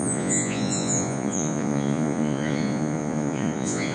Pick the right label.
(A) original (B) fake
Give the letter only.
B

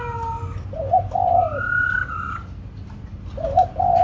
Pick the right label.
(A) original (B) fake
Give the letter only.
A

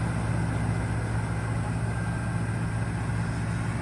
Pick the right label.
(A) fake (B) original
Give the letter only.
B